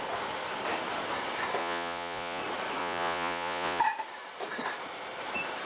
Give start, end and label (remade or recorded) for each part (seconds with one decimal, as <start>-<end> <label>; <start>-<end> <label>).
0.0-1.6 recorded; 1.6-2.4 remade; 2.4-2.8 recorded; 2.8-3.8 remade; 3.8-5.6 recorded

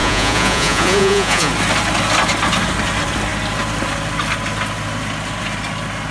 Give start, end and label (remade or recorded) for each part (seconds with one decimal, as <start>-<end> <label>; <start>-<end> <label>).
0.0-1.5 remade; 1.5-6.1 recorded

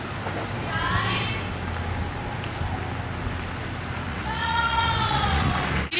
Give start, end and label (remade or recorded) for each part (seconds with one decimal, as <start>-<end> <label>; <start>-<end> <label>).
0.0-4.1 recorded; 4.1-5.5 remade; 5.5-6.0 recorded

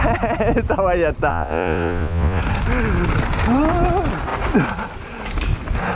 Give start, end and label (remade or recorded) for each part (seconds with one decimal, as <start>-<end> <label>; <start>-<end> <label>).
0.0-1.3 recorded; 1.3-2.4 remade; 2.4-6.0 recorded

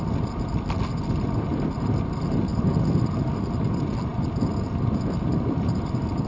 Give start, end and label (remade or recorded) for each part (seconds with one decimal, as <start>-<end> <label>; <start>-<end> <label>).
0.0-6.3 recorded